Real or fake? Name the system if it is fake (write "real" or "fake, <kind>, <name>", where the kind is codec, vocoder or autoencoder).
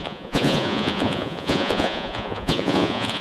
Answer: fake, vocoder, Vocos